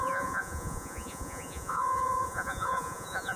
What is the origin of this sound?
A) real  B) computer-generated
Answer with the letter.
B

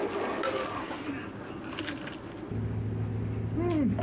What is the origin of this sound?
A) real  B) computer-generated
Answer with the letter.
A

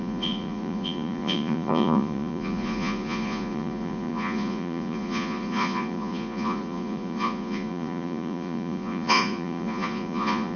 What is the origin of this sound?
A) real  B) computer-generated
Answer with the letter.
B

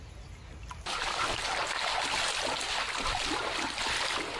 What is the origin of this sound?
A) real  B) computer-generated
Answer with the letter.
A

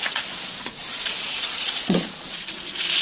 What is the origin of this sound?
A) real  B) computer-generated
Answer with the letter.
B